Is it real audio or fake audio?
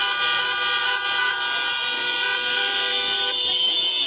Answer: real